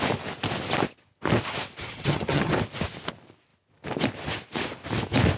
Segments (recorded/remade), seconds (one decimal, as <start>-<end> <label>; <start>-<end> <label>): 0.0-1.8 recorded; 1.8-2.5 remade; 2.5-5.4 recorded